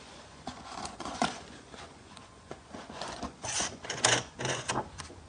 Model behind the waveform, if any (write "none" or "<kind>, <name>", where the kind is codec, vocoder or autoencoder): vocoder, Vocos